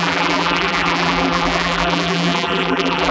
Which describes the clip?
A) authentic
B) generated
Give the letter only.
B